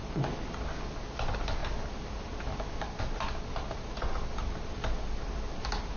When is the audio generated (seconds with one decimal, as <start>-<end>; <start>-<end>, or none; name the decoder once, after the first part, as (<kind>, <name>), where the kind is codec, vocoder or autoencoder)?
none